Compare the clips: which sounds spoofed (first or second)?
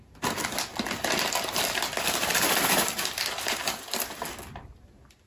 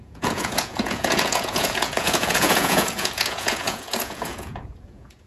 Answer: second